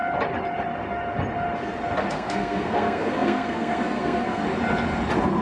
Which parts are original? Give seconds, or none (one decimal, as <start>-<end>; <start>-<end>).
0.0-2.1; 4.4-5.4